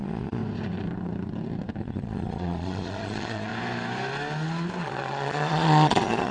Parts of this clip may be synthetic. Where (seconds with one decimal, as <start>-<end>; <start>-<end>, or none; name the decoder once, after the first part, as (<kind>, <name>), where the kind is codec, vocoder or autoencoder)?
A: 0.0-0.4 (vocoder, Vocos); 1.8-3.5; 4.8-6.3